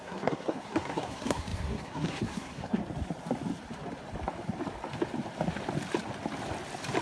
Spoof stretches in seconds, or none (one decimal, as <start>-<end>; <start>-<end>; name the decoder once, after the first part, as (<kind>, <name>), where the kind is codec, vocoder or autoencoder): 0.0-2.8 (codec, SNAC)